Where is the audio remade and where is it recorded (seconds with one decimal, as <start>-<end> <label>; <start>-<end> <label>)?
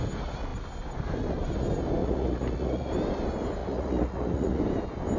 0.0-2.0 recorded; 2.0-2.9 remade; 2.9-3.6 recorded; 3.6-4.6 remade; 4.6-5.2 recorded